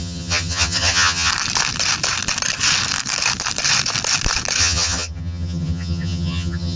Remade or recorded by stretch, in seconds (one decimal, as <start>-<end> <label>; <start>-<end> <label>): 0.0-1.3 remade; 1.3-4.6 recorded; 4.6-6.8 remade